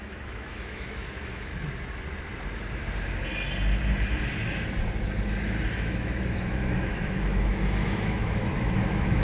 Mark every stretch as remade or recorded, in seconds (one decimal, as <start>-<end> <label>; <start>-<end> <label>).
0.0-1.5 remade; 1.5-5.7 recorded; 5.7-9.2 remade